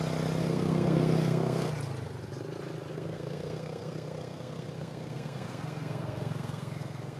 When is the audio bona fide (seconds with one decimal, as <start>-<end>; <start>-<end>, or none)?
0.0-0.4; 1.7-2.9